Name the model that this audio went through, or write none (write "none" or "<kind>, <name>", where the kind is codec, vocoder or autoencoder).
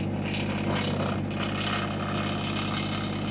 none